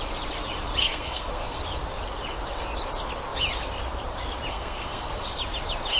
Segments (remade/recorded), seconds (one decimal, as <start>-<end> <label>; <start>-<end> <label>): 0.0-0.8 recorded; 0.8-1.6 remade; 1.6-4.5 recorded; 4.5-5.2 remade; 5.2-6.0 recorded